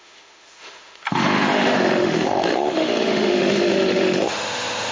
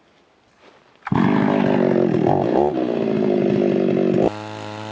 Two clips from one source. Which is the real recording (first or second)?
second